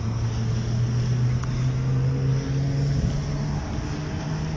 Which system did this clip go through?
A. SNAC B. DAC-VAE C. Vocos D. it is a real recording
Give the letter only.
D